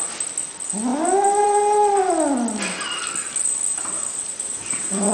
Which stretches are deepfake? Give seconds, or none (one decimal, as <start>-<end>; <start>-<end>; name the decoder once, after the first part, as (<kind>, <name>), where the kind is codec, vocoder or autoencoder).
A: 0.9-2.1 (vocoder, BigVGAN v2); 3.7-5.1